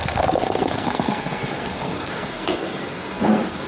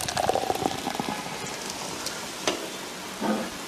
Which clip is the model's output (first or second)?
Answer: first